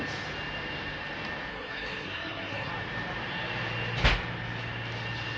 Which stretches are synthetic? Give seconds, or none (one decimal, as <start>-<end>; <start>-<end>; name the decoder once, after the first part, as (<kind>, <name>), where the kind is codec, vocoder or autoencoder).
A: 1.5-2.7 (codec, SNAC)